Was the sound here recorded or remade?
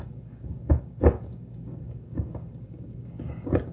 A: remade